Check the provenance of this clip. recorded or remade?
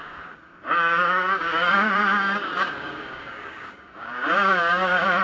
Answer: remade